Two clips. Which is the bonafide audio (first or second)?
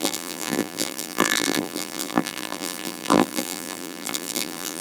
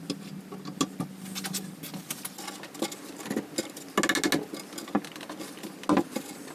second